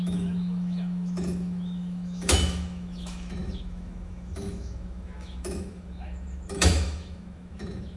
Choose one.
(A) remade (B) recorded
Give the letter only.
A